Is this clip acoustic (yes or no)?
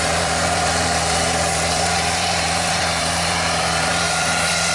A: no